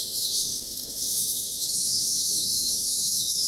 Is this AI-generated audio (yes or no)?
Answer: yes